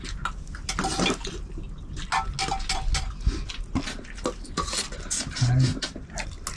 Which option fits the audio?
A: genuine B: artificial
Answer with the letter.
A